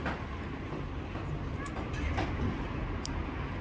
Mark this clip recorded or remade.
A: recorded